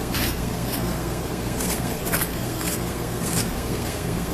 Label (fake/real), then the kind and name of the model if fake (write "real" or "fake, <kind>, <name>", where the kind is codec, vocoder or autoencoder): fake, codec, SNAC